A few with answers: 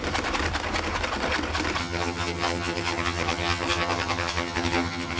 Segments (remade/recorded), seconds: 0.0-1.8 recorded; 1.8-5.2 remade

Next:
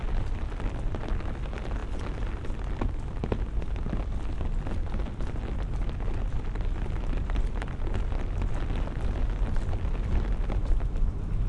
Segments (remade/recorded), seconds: 0.0-11.5 recorded

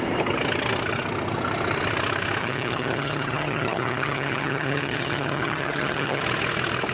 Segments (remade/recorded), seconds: 0.0-2.4 recorded; 2.4-6.2 remade; 6.2-6.9 recorded

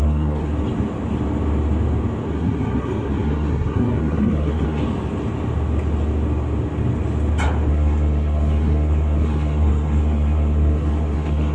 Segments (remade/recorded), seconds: 0.0-0.5 remade; 0.5-2.3 recorded; 2.3-4.8 remade; 4.8-7.7 recorded; 7.7-11.5 remade

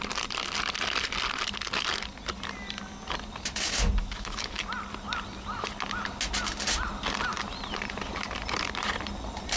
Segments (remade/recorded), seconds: 0.0-4.0 recorded; 4.0-4.6 remade; 4.6-9.6 recorded

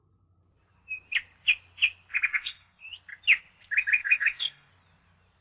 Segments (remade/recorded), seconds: 0.0-2.3 recorded; 2.3-2.9 remade; 2.9-4.0 recorded; 4.0-4.7 remade; 4.7-5.4 recorded